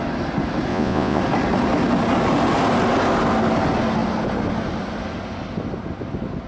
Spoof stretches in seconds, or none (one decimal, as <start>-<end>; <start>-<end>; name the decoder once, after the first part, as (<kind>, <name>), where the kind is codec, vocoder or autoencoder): 0.7-1.2 (vocoder, Vocos)